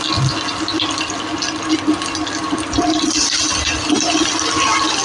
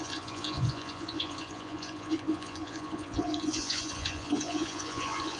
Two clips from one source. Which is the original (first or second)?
first